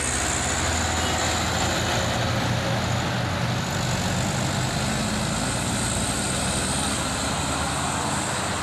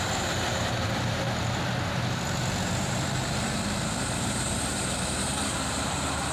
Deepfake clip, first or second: second